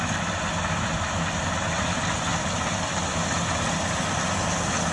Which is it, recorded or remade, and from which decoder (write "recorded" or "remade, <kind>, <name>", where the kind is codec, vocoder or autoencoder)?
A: recorded